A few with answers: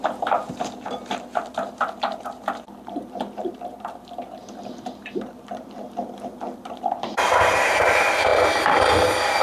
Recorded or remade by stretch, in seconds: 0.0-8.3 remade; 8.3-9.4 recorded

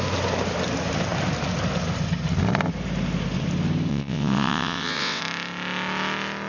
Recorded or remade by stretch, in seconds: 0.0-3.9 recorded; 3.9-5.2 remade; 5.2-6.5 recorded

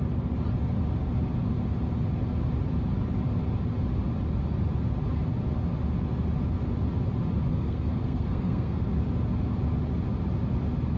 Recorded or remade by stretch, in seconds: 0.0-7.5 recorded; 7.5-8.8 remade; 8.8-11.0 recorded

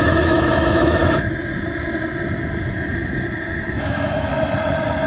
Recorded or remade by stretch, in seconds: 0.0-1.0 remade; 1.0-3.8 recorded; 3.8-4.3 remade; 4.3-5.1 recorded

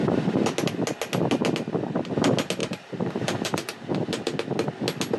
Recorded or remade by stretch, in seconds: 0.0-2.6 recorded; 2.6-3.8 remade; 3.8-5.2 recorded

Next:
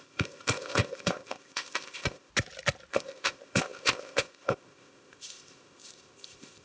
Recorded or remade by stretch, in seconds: 0.0-2.3 remade; 2.3-2.9 recorded; 2.9-6.6 remade

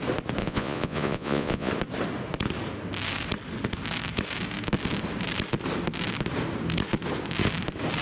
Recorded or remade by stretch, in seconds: 0.0-0.4 recorded; 0.4-1.7 remade; 1.7-8.0 recorded

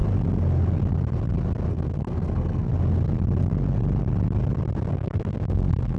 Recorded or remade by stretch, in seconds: 0.0-1.7 recorded; 1.7-2.7 remade; 2.7-4.9 recorded; 4.9-6.0 remade